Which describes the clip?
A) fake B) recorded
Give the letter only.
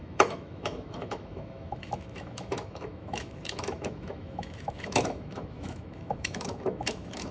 A